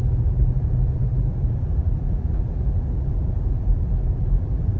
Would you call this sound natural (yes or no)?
no